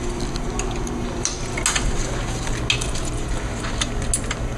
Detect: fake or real real